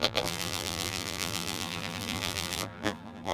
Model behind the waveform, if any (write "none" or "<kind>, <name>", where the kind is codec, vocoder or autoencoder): vocoder, BigVGAN v2